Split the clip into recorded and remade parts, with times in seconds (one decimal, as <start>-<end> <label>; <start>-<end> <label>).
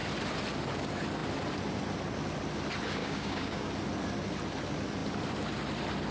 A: 0.0-3.0 recorded; 3.0-3.7 remade; 3.7-6.1 recorded